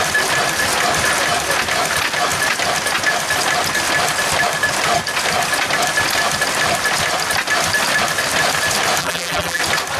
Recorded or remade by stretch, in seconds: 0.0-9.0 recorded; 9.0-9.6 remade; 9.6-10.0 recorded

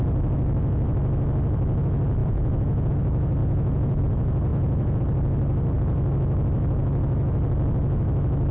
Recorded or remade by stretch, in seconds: 0.0-2.2 recorded; 2.2-2.9 remade; 2.9-3.4 recorded; 3.4-4.0 remade; 4.0-4.5 recorded; 4.5-5.0 remade; 5.0-8.5 recorded